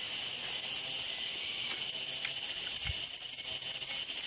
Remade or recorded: recorded